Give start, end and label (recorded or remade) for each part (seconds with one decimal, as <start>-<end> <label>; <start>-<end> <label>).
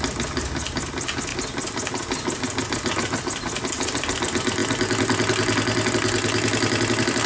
0.0-7.3 recorded